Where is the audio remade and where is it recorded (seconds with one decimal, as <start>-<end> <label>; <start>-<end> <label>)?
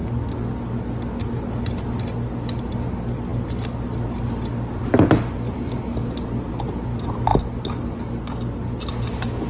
0.0-9.5 recorded